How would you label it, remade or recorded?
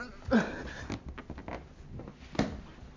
recorded